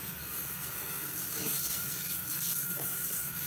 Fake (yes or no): yes